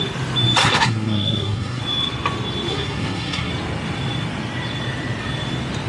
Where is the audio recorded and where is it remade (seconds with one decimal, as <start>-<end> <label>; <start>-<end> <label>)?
0.0-0.6 recorded; 0.6-1.8 remade; 1.8-2.7 recorded; 2.7-3.5 remade; 3.5-5.9 recorded

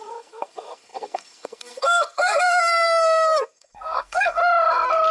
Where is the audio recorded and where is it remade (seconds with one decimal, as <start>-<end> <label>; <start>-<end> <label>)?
0.0-4.4 remade; 4.4-5.1 recorded